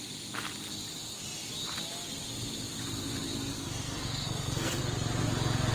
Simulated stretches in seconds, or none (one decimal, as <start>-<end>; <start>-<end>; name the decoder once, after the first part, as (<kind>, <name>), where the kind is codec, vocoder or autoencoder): 3.5-4.8 (codec, SNAC)